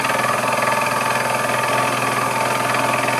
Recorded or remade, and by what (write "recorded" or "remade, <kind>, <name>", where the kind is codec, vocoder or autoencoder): recorded